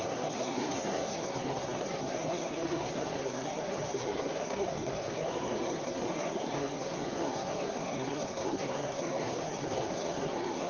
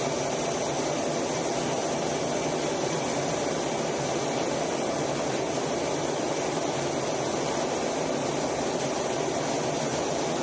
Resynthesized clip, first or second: first